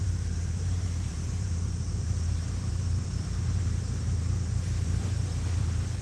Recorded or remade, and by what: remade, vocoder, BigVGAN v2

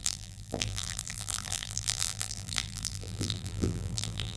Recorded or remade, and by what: remade, vocoder, BigVGAN v2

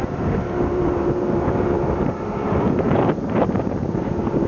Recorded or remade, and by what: remade, vocoder, BigVGAN v2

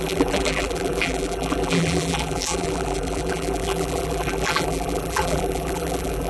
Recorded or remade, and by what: remade, vocoder, BigVGAN v2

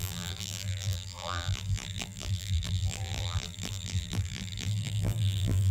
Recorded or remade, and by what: remade, vocoder, BigVGAN v2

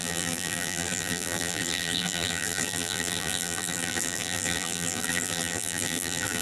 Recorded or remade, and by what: remade, vocoder, BigVGAN v2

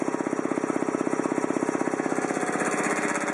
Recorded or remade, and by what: recorded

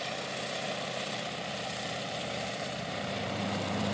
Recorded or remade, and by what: remade, vocoder, BigVGAN v2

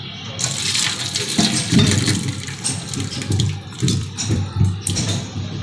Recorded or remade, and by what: remade, vocoder, BigVGAN v2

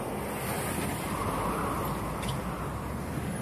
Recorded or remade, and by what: recorded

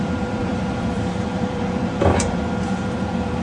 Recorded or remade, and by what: remade, vocoder, BigVGAN v2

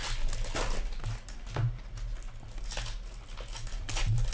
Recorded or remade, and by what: recorded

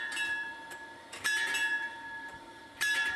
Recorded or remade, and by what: remade, vocoder, BigVGAN v2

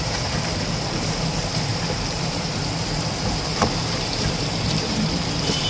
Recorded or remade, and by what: remade, vocoder, BigVGAN v2